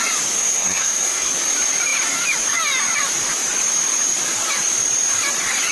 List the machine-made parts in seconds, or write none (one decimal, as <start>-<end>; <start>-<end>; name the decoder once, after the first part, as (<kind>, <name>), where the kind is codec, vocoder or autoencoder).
0.4-1.3 (codec, SNAC)